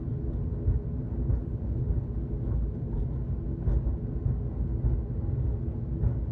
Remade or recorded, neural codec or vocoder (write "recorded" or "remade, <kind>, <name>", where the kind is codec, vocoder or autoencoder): recorded